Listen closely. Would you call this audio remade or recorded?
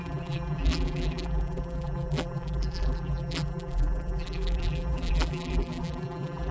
remade